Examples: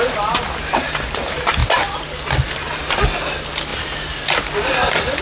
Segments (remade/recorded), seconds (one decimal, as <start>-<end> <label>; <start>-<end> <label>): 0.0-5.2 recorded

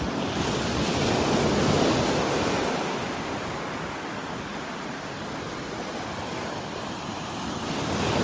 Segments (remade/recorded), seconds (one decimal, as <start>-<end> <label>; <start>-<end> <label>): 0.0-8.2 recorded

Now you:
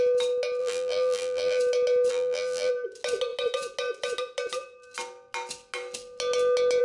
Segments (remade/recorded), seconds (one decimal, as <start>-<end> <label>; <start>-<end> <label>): 0.0-0.6 recorded; 0.6-1.6 remade; 1.6-2.1 recorded; 2.1-2.7 remade; 2.7-6.8 recorded

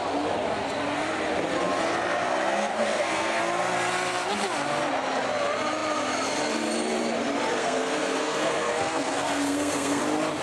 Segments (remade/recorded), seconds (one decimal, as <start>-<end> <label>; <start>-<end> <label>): 0.0-2.7 recorded; 2.7-3.4 remade; 3.4-7.6 recorded; 7.6-10.0 remade; 10.0-10.4 recorded

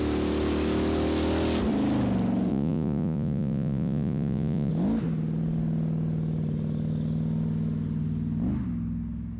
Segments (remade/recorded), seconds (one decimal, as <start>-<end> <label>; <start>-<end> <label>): 0.0-2.5 recorded; 2.5-4.7 remade; 4.7-9.4 recorded